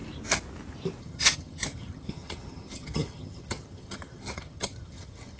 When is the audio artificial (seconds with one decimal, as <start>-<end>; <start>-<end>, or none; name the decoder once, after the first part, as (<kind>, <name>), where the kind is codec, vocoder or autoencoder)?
1.0-5.4 (vocoder, HiFi-GAN)